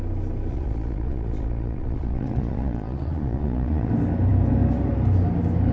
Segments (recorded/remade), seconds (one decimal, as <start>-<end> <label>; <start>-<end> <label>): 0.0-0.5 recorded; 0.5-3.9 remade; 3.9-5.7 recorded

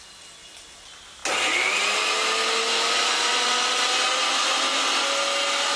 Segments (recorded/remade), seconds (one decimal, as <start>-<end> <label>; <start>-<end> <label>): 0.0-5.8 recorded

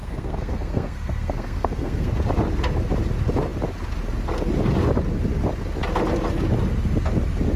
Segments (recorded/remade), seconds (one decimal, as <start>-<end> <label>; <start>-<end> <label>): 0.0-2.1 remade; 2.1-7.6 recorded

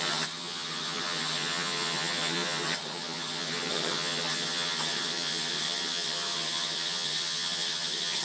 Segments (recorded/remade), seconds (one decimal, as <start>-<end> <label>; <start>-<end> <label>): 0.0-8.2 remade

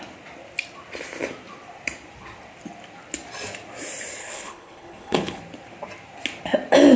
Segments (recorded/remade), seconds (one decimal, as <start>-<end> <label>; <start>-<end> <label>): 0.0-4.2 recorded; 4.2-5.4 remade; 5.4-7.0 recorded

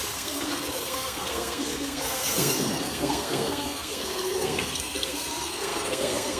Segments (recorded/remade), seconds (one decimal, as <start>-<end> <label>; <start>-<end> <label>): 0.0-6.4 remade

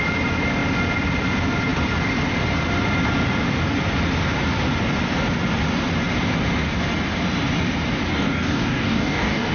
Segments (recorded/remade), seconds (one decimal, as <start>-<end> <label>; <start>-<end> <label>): 0.0-8.1 recorded; 8.1-9.5 remade

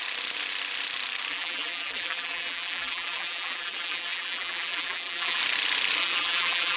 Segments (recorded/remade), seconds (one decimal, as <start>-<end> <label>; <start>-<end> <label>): 0.0-1.3 recorded; 1.3-5.4 remade; 5.4-6.0 recorded; 6.0-6.8 remade